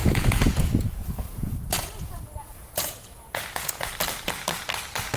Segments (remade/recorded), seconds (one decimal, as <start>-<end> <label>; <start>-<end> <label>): 0.0-3.9 remade; 3.9-5.2 recorded